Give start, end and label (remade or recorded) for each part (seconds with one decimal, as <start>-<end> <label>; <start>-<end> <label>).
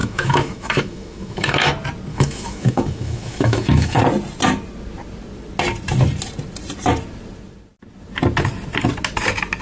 0.0-1.7 remade; 1.7-2.1 recorded; 2.1-4.0 remade; 4.0-9.6 recorded